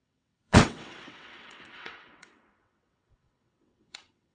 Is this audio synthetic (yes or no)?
yes